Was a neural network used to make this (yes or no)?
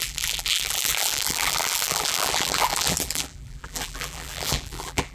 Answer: yes